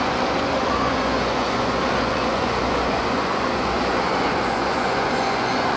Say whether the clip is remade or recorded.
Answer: remade